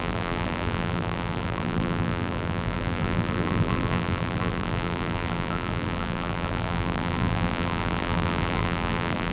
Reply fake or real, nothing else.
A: fake